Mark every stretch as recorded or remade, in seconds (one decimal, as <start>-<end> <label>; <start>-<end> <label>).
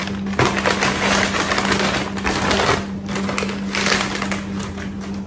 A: 0.0-5.3 recorded